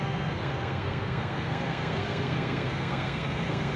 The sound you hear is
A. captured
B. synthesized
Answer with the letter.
B